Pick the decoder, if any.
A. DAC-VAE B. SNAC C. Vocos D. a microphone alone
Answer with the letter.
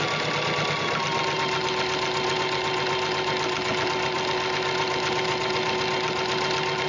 D